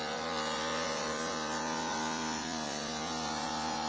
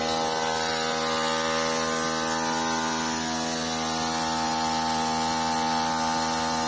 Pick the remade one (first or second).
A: first